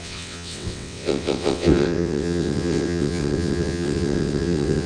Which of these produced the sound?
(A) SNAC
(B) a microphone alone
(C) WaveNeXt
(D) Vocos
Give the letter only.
C